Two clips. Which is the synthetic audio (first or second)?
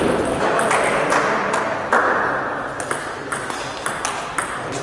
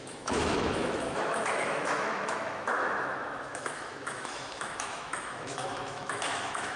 second